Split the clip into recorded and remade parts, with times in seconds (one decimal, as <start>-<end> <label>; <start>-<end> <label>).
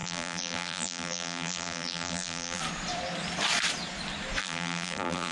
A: 0.0-2.6 remade; 2.6-4.4 recorded; 4.4-5.3 remade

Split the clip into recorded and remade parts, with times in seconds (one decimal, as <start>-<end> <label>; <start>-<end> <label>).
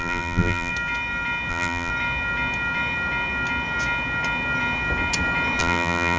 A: 0.0-0.7 remade; 0.7-1.5 recorded; 1.5-1.9 remade; 1.9-5.6 recorded; 5.6-6.2 remade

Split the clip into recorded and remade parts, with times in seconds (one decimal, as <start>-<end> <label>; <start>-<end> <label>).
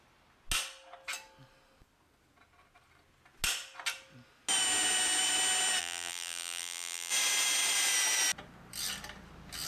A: 0.0-5.8 recorded; 5.8-7.1 remade; 7.1-9.7 recorded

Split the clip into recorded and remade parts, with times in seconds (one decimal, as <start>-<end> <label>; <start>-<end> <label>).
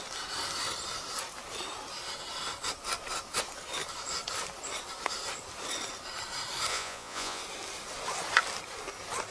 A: 0.0-6.7 recorded; 6.7-7.4 remade; 7.4-9.3 recorded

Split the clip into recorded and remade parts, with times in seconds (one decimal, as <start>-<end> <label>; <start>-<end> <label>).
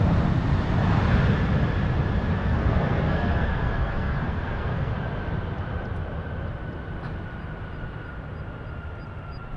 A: 0.0-2.3 recorded; 2.3-4.9 remade; 4.9-9.6 recorded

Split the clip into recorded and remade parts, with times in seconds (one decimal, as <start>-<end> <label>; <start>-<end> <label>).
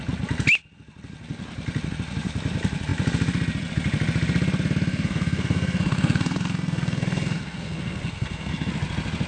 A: 0.0-4.9 recorded; 4.9-8.7 remade; 8.7-9.3 recorded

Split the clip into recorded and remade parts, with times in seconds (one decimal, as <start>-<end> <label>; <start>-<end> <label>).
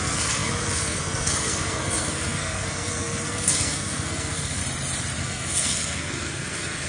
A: 0.0-4.6 remade; 4.6-5.2 recorded; 5.2-6.9 remade